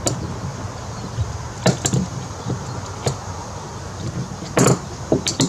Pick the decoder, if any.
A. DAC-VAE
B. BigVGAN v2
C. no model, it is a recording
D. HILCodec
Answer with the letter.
C